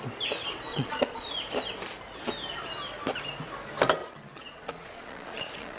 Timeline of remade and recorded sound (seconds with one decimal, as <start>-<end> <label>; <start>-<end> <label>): 0.0-0.7 recorded; 0.7-1.3 remade; 1.3-4.0 recorded; 4.0-5.8 remade